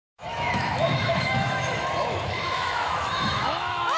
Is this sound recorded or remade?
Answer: remade